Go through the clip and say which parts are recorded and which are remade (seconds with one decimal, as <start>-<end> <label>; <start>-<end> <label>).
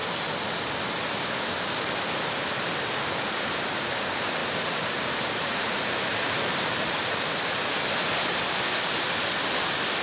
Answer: 0.0-4.4 recorded; 4.4-7.2 remade; 7.2-10.0 recorded